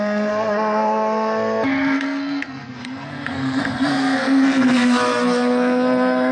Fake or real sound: fake